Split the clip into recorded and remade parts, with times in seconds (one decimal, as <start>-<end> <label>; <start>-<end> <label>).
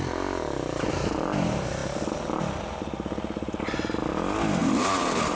0.0-4.6 recorded; 4.6-5.3 remade